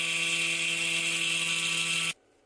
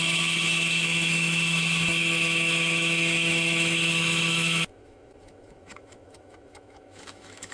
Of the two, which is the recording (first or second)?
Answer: first